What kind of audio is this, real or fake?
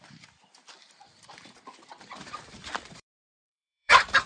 fake